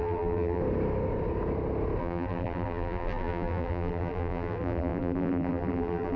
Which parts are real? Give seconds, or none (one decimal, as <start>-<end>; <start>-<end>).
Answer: 0.6-2.0